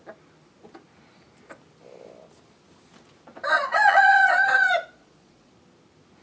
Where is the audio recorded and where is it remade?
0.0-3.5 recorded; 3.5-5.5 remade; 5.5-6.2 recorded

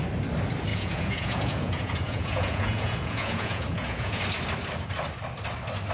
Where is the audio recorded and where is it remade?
0.0-0.7 recorded; 0.7-4.2 remade; 4.2-5.9 recorded

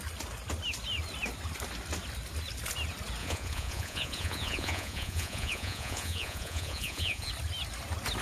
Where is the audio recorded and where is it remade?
0.0-3.2 recorded; 3.2-7.3 remade; 7.3-8.2 recorded